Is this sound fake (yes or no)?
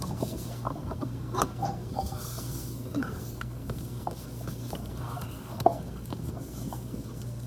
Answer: yes